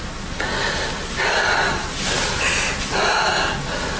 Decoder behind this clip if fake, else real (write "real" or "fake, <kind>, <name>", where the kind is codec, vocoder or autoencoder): real